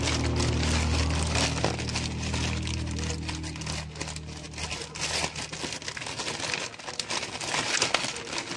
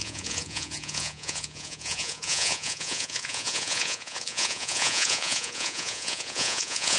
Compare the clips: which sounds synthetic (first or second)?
second